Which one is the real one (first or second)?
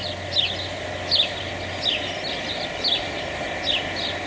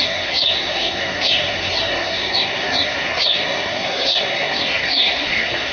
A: first